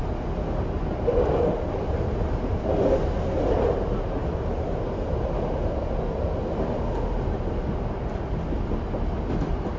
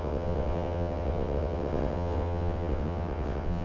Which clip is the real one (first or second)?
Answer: first